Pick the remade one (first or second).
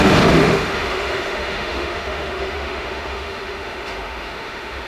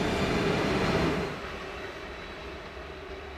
first